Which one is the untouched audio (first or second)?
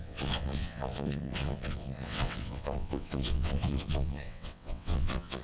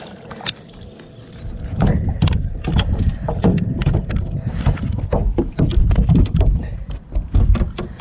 second